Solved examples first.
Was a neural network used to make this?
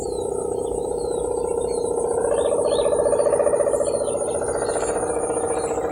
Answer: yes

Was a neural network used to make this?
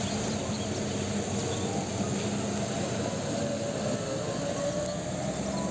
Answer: no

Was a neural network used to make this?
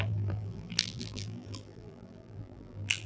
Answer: yes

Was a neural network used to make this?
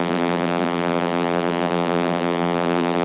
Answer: yes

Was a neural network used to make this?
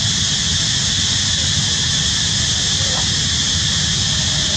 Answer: no